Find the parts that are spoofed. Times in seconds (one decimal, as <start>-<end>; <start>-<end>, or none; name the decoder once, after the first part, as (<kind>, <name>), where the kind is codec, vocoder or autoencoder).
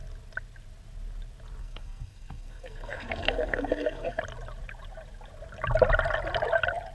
1.6-4.2 (codec, SNAC)